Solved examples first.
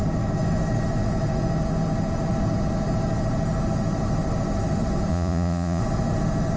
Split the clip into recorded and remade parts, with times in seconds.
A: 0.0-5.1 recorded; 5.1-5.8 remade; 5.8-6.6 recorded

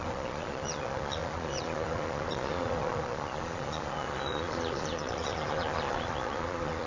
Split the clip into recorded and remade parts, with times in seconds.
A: 0.0-6.9 remade

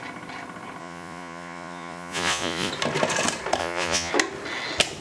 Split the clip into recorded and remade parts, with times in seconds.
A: 0.0-0.8 recorded; 0.8-2.7 remade; 2.7-3.6 recorded; 3.6-4.1 remade; 4.1-5.0 recorded

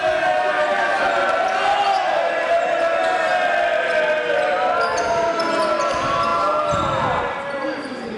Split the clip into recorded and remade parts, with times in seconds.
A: 0.0-8.2 recorded

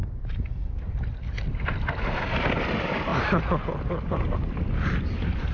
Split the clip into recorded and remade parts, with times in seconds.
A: 0.0-5.5 recorded

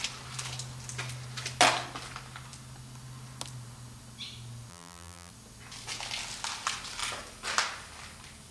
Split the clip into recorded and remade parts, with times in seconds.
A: 0.0-4.7 recorded; 4.7-5.3 remade; 5.3-8.5 recorded

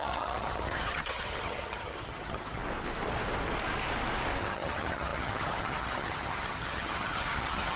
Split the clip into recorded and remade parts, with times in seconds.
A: 0.0-2.6 remade; 2.6-4.4 recorded; 4.4-7.8 remade

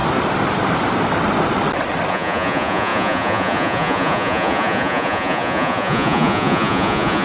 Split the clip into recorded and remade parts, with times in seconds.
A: 0.0-2.1 recorded; 2.1-7.2 remade